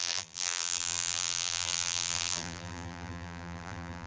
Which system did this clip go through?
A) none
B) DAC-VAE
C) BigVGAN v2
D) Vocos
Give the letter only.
C